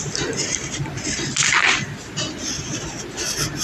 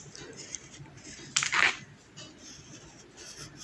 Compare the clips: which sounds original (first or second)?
second